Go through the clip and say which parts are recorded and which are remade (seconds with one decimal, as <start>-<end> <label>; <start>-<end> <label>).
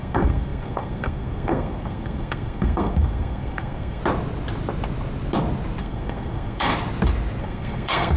0.0-4.0 remade; 4.0-5.8 recorded; 5.8-6.7 remade; 6.7-7.4 recorded; 7.4-8.2 remade